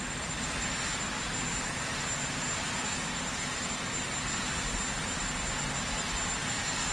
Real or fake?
real